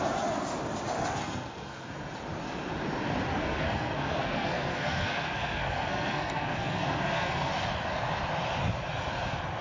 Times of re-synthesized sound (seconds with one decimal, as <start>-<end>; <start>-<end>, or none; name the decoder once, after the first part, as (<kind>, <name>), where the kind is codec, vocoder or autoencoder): 1.2-1.9 (codec, SNAC); 3.3-7.5